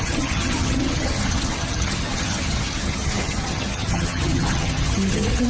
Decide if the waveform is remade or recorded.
remade